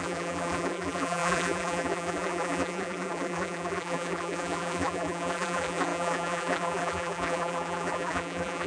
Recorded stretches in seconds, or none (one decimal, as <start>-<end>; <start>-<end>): none

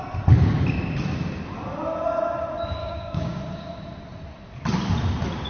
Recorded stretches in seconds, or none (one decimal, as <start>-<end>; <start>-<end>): 0.0-2.8; 3.4-5.5

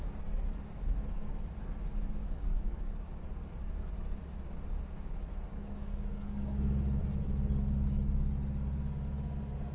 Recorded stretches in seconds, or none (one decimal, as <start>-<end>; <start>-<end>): 0.0-2.2; 2.9-5.5; 6.8-9.7

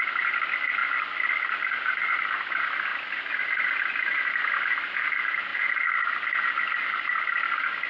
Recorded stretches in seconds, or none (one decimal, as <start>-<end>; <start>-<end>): 0.0-7.9

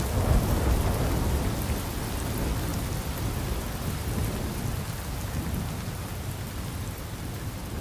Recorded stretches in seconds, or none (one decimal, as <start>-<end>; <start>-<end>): 0.0-7.8

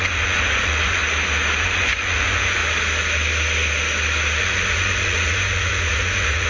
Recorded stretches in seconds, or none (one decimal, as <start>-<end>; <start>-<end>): 1.0-1.6; 2.6-4.4